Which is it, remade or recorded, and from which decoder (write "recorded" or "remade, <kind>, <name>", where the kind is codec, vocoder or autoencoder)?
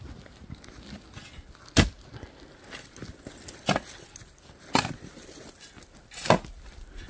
recorded